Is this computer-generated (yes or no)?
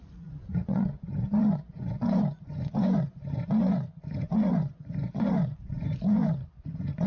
yes